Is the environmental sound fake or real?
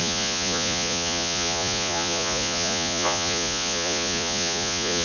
fake